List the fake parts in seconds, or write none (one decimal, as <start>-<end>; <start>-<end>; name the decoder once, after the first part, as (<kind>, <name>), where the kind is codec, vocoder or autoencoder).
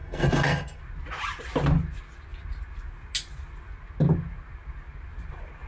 0.0-0.8 (codec, SNAC)